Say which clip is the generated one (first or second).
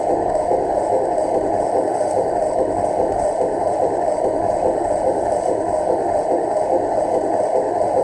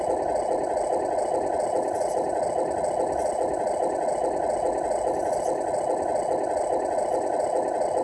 first